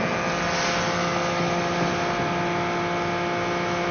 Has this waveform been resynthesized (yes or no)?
no